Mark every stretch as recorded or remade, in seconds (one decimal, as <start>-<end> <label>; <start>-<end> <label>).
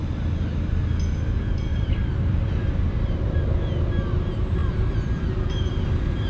0.0-1.7 recorded; 1.7-2.6 remade; 2.6-4.6 recorded; 4.6-5.8 remade; 5.8-6.3 recorded